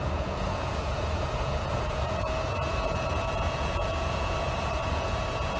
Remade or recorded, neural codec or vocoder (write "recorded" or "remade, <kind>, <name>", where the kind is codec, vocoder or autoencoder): remade, vocoder, Vocos